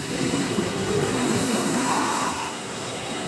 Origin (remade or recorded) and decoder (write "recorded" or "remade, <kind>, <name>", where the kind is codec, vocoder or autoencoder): remade, codec, SNAC